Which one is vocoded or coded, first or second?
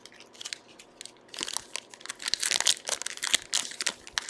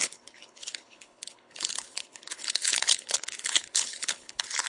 second